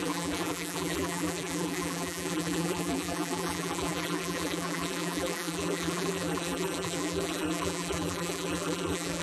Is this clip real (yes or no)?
no